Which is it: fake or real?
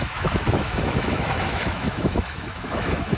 fake